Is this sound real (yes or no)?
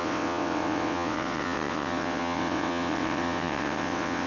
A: no